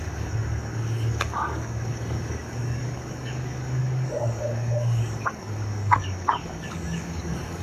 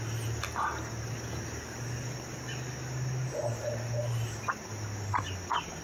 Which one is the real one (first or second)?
second